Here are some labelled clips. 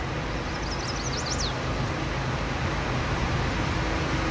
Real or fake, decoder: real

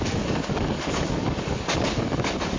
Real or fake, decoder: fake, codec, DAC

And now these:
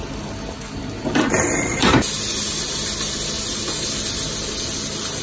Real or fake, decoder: real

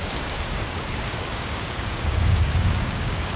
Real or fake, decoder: fake, codec, DAC